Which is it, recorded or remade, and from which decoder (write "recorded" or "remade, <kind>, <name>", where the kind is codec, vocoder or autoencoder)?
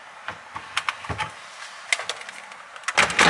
recorded